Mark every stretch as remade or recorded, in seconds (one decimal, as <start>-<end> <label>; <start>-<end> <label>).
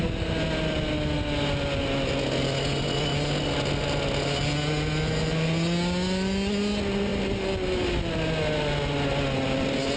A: 0.0-10.0 recorded